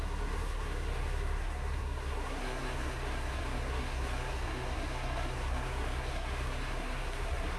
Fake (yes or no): yes